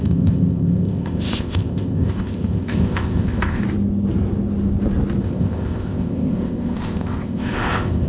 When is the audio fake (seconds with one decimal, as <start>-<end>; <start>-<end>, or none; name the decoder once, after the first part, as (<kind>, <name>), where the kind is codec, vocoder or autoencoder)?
0.0-3.6 (codec, ZipCodec); 5.2-8.1